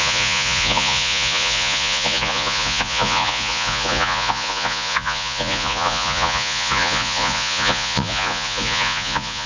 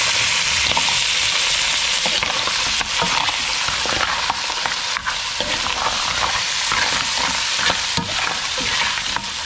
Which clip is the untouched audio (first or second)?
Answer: second